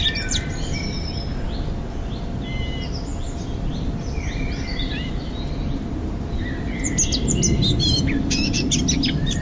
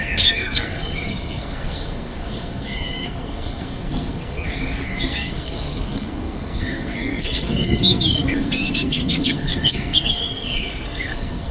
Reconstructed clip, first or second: second